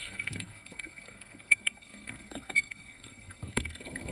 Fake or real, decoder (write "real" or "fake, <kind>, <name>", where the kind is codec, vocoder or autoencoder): fake, codec, SNAC